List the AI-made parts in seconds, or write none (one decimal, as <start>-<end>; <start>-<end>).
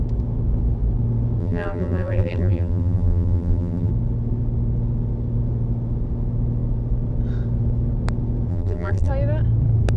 1.4-3.9; 8.5-9.1